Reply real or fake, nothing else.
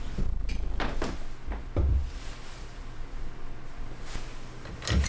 real